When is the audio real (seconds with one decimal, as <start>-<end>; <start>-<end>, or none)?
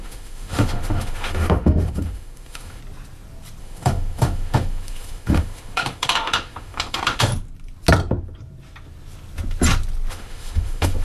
2.8-3.6; 7.3-10.1